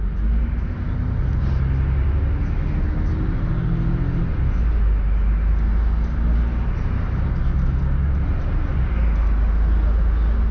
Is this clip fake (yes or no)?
no